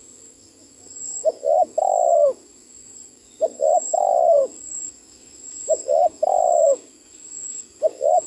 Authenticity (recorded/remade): remade